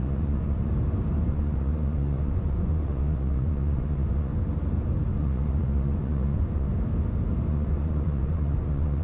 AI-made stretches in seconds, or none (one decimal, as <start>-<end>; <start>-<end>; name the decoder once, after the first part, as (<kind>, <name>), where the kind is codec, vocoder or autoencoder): 0.0-0.7 (vocoder, Vocos); 1.3-4.3; 5.1-6.7; 7.5-9.0